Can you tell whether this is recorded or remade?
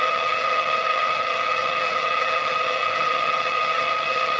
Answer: remade